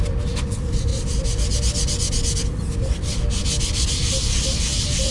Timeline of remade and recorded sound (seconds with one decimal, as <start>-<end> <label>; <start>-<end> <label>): 0.0-5.1 recorded